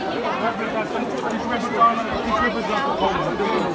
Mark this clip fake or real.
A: real